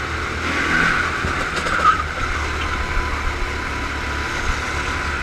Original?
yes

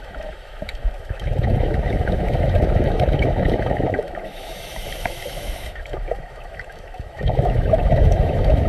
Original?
no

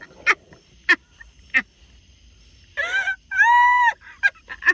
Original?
yes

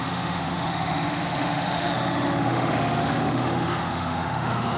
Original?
no